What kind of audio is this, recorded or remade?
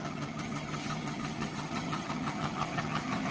remade